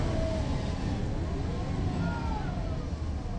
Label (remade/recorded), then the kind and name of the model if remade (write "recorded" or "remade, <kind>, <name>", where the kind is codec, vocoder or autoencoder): recorded